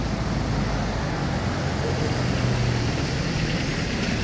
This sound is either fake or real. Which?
real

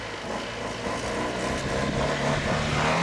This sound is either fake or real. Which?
real